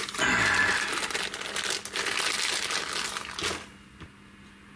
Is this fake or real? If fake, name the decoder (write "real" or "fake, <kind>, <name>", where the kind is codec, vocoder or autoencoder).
real